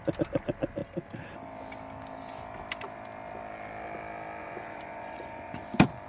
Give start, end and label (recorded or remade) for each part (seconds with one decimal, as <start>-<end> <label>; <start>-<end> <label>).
0.0-4.4 recorded; 4.4-5.6 remade; 5.6-6.1 recorded